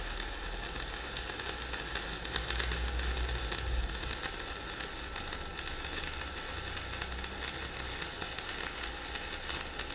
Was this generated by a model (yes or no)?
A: no